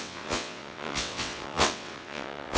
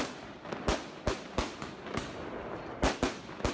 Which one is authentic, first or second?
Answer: second